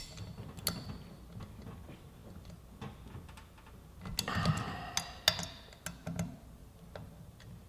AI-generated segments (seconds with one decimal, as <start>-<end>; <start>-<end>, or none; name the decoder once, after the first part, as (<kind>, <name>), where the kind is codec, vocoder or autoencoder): none